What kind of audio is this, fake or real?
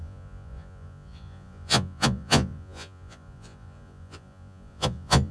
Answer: fake